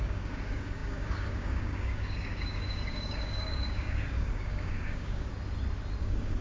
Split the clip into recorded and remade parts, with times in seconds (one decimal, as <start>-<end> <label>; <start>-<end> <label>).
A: 0.0-5.3 remade; 5.3-6.0 recorded; 6.0-6.4 remade